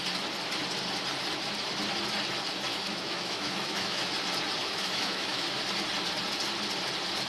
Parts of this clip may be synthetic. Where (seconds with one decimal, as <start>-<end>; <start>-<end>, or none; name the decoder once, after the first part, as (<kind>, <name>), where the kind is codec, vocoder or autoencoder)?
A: 2.7-4.1 (autoencoder, DAC-VAE); 4.6-5.5